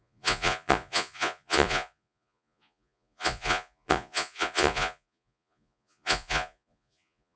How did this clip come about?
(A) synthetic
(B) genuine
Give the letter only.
A